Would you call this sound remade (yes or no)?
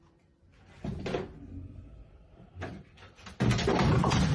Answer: yes